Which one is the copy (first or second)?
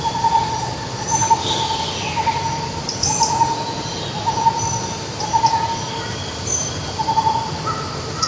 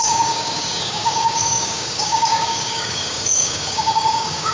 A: second